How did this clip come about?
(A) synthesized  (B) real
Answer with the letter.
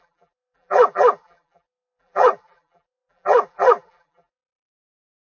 A